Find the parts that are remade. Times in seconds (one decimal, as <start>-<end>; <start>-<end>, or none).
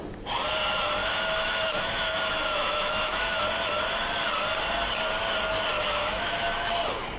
1.0-3.4; 5.7-6.7